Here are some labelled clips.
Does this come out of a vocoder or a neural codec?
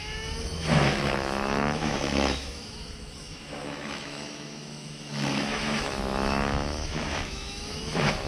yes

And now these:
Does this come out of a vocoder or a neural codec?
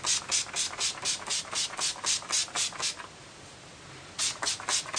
no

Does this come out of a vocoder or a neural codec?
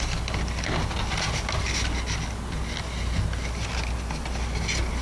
no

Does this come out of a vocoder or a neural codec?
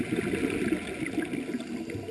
no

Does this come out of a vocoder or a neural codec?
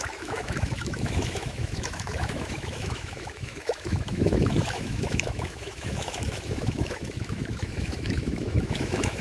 yes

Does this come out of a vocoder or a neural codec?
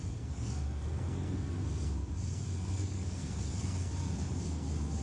yes